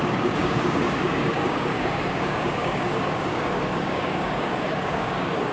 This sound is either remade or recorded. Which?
remade